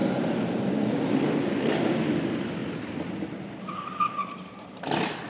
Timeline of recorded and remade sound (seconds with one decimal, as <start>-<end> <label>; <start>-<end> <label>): 0.0-5.3 recorded

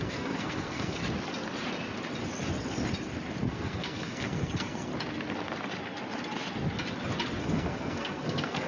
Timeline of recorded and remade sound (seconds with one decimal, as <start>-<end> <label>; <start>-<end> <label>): 0.0-1.0 remade; 1.0-3.4 recorded; 3.4-4.9 remade; 4.9-7.4 recorded; 7.4-8.7 remade

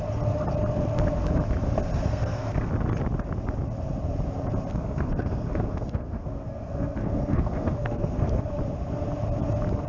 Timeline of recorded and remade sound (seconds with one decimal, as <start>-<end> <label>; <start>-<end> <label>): 0.0-2.1 recorded; 2.1-2.7 remade; 2.7-4.7 recorded; 4.7-8.4 remade; 8.4-9.9 recorded

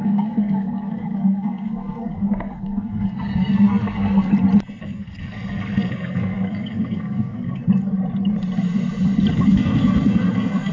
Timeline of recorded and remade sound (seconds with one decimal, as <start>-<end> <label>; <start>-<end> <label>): 0.0-4.3 remade; 4.3-4.8 recorded; 4.8-7.6 remade; 7.6-9.3 recorded; 9.3-10.7 remade